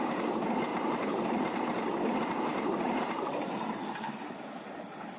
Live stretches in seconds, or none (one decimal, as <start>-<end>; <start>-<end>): 0.0-0.7; 1.6-2.5; 3.8-5.2

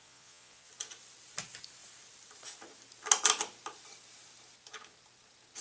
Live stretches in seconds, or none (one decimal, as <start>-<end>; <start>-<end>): 0.7-5.6

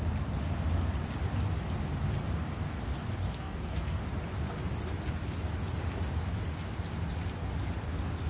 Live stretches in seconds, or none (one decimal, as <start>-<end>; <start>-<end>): 0.0-3.2; 4.0-8.3

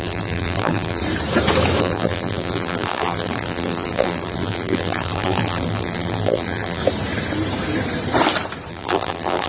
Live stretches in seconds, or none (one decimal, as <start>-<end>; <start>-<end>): 1.0-1.8; 6.8-8.7

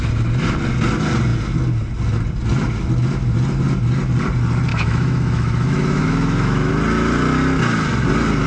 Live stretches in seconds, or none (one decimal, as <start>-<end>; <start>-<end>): 0.0-4.7; 6.7-8.5